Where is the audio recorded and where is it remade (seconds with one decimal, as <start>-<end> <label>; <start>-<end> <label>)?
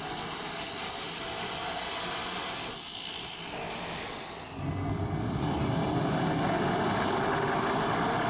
0.0-8.3 recorded